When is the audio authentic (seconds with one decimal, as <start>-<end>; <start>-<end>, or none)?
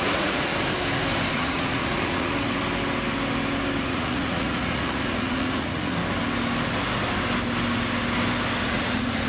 0.5-1.3; 2.3-3.8; 6.0-8.7